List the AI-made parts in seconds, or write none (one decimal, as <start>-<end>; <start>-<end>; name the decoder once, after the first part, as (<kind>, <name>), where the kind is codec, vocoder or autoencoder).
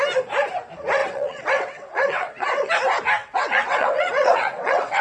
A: 1.0-2.7 (vocoder, WaveNeXt); 3.2-5.0